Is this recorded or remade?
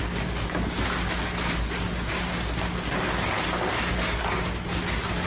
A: recorded